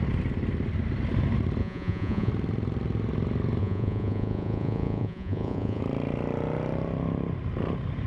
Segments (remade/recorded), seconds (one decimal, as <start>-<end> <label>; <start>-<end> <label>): 0.0-1.6 recorded; 1.6-2.3 remade; 2.3-3.6 recorded; 3.6-5.8 remade; 5.8-8.1 recorded